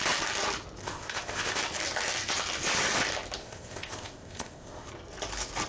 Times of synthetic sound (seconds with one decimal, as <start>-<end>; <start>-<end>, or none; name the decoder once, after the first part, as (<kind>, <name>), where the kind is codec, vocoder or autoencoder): 0.8-1.6 (codec, ZipCodec); 3.4-4.9